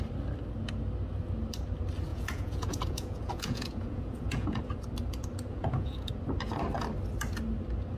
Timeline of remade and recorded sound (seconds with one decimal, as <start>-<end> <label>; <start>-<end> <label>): 0.0-2.1 recorded; 2.1-4.6 remade; 4.6-5.5 recorded; 5.5-6.1 remade; 6.1-8.0 recorded

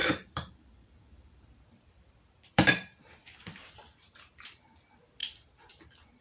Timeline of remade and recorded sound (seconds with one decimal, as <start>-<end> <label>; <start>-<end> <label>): 0.0-3.7 remade; 3.7-5.2 recorded; 5.2-6.2 remade

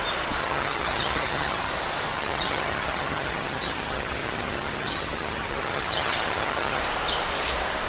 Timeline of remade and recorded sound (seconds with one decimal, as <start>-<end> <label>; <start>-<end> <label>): 0.0-0.4 recorded; 0.4-1.7 remade; 1.7-2.1 recorded; 2.1-6.8 remade; 6.8-7.9 recorded

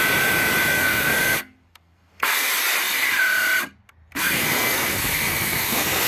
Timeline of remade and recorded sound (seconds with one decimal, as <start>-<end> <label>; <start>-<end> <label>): 0.0-0.7 recorded; 0.7-2.5 remade; 2.5-4.1 recorded; 4.1-6.1 remade